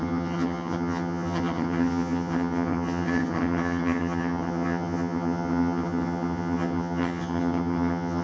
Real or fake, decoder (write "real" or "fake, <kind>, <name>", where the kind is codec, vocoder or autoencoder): fake, vocoder, HiFi-GAN